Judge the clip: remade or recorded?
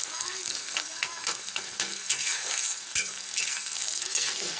remade